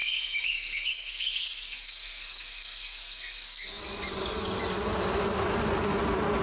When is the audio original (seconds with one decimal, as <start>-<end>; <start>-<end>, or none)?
3.8-6.4